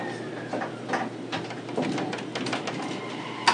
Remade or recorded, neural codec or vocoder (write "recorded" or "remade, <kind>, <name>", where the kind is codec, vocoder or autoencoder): recorded